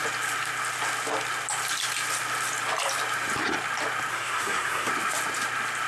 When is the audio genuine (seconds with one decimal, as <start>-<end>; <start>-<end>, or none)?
0.0-4.1; 4.9-5.9